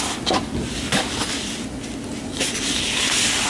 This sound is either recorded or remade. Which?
recorded